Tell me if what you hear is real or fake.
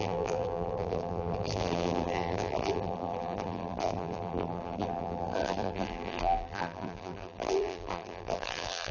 fake